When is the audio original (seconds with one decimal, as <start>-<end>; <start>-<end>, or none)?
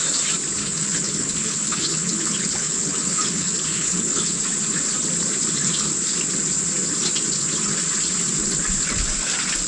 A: 0.0-0.6; 4.4-9.7